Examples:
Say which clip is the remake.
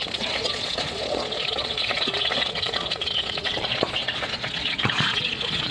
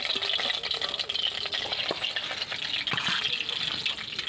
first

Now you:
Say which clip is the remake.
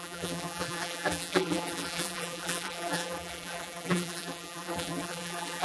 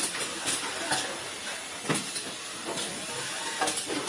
first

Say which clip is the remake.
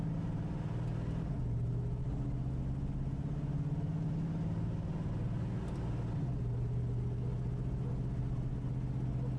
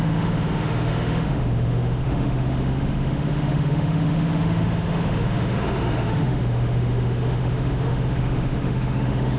second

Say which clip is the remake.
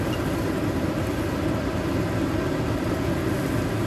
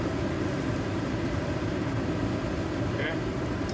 second